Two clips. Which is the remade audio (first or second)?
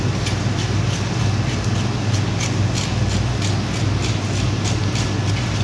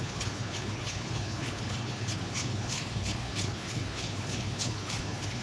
second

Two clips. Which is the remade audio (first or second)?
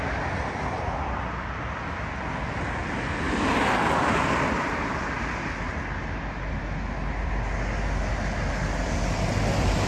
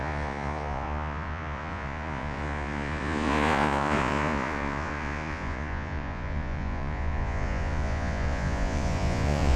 second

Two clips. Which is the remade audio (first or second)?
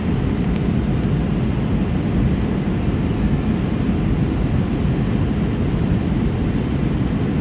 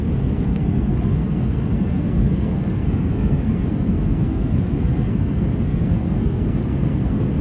second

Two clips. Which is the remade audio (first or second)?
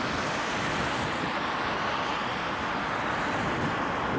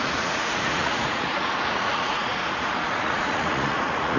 second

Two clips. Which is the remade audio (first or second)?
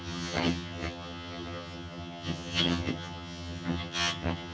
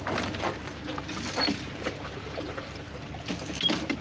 first